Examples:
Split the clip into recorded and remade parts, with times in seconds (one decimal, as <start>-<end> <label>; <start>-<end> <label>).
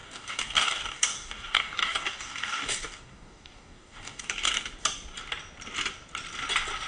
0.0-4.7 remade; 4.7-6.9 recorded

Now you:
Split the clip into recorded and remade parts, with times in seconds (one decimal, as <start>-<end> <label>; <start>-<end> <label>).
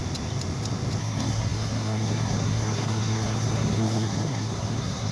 0.0-1.0 recorded; 1.0-5.1 remade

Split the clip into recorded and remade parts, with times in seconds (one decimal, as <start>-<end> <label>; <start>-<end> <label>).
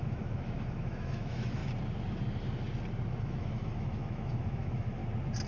0.0-1.6 remade; 1.6-3.2 recorded; 3.2-5.0 remade; 5.0-5.5 recorded